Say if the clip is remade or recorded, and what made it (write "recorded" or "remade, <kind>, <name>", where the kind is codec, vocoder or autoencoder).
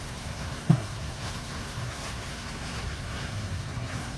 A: remade, codec, SNAC